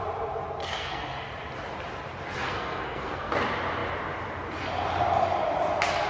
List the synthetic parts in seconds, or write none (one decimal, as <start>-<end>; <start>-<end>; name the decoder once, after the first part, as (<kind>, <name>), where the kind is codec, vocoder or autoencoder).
0.6-1.2 (codec, SNAC); 2.4-3.3